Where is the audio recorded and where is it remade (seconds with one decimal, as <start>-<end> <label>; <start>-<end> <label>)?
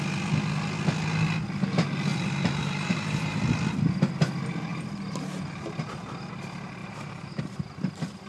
0.0-2.1 recorded; 2.1-3.4 remade; 3.4-6.8 recorded; 6.8-7.4 remade; 7.4-8.3 recorded